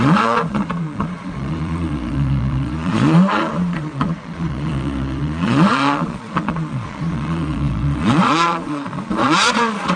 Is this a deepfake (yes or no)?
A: yes